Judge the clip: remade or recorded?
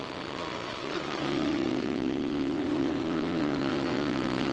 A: remade